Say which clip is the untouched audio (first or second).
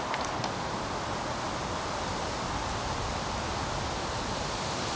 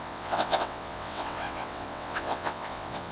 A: first